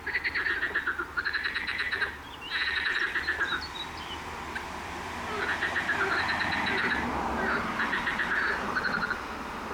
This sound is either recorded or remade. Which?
recorded